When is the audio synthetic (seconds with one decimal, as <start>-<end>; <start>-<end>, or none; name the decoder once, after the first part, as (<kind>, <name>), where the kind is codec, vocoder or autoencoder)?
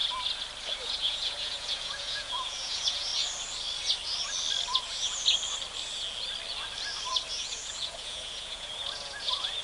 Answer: 0.8-3.1 (vocoder, Vocos); 7.3-9.6